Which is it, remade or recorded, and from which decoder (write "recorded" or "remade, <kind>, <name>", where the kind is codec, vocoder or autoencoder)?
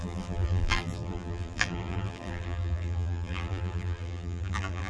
remade, vocoder, BigVGAN v2